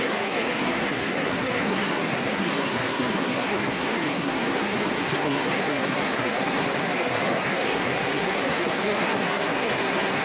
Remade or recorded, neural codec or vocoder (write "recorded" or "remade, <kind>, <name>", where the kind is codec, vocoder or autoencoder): remade, codec, SNAC